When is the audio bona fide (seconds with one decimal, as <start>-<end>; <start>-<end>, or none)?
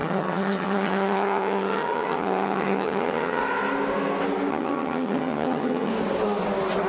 3.4-4.5; 5.9-6.9